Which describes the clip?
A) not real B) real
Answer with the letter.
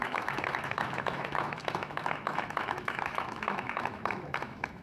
A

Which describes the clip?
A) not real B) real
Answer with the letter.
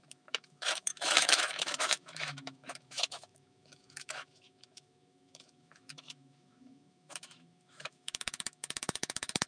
A